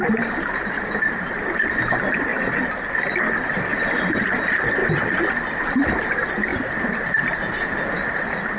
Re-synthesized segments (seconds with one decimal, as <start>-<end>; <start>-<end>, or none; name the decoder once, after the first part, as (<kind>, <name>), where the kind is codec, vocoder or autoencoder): 3.7-4.2 (vocoder, BigVGAN v2); 4.8-5.9; 6.5-7.1